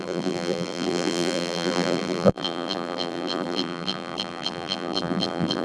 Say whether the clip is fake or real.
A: fake